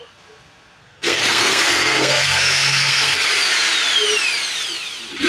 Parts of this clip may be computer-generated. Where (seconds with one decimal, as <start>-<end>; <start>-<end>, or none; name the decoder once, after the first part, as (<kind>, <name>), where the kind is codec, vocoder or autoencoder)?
0.8-3.3 (codec, SNAC)